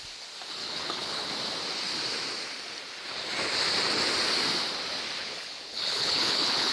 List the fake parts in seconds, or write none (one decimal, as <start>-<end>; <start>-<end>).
0.6-1.3; 5.2-6.7